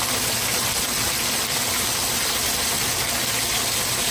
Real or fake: real